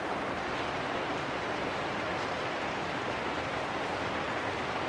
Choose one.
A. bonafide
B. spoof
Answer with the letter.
A